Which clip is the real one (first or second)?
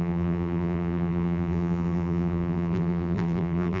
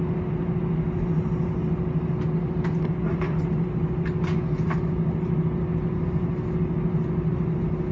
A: second